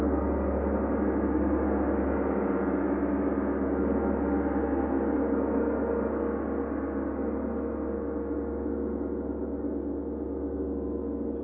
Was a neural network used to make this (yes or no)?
no